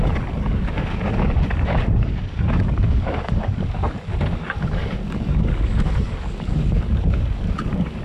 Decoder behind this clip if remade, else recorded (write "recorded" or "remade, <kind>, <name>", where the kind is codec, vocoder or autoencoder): remade, codec, DAC